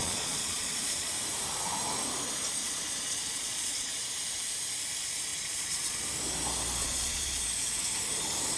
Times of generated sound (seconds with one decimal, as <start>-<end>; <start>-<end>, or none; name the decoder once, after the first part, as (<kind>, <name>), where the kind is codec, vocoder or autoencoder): 0.0-1.1 (vocoder, Vocos); 2.6-3.9; 5.3-6.0; 6.8-7.4